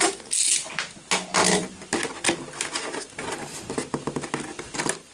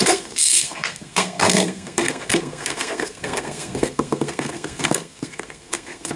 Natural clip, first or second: first